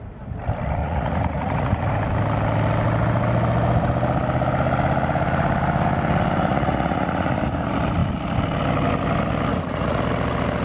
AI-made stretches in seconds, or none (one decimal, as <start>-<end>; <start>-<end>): 0.8-1.9; 6.5-7.5; 9.5-10.0